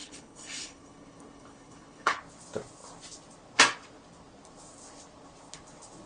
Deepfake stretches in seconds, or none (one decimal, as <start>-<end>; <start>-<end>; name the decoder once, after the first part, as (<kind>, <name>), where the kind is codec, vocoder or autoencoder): 0.0-2.2 (codec, HILCodec)